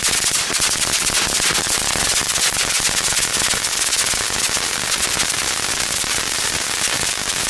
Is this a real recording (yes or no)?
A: yes